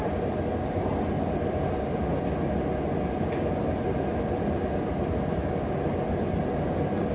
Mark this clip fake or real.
real